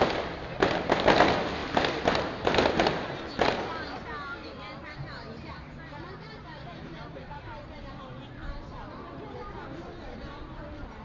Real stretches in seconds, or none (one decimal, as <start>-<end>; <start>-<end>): 0.0-4.4; 7.8-11.0